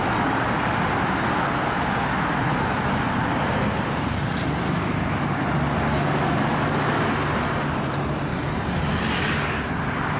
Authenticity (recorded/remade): recorded